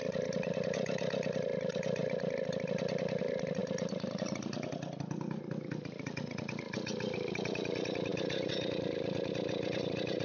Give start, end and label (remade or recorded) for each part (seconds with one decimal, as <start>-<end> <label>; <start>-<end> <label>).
0.0-10.2 recorded